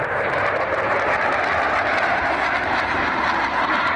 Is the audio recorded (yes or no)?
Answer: yes